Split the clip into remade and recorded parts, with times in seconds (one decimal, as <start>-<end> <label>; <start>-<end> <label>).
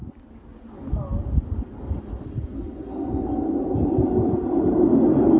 0.0-5.4 recorded